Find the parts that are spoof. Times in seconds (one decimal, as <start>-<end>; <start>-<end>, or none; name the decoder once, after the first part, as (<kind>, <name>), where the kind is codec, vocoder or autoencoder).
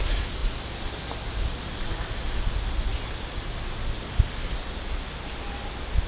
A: none